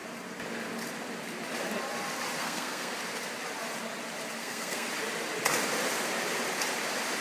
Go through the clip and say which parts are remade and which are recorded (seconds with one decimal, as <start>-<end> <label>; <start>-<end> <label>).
0.0-2.4 recorded; 2.4-2.9 remade; 2.9-4.4 recorded; 4.4-4.9 remade; 4.9-7.2 recorded